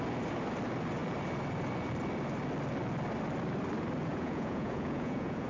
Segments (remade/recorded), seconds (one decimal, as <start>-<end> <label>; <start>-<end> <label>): 0.0-4.1 recorded; 4.1-5.5 remade